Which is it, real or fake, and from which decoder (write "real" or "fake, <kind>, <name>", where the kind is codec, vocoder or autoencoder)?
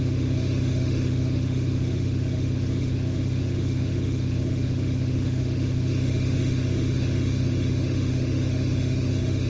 fake, autoencoder, DAC-VAE